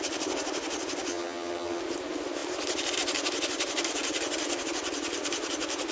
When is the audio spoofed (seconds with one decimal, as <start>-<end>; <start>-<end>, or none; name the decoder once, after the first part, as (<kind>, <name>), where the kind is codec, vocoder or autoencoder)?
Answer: 1.1-1.8 (vocoder, HiFi-GAN)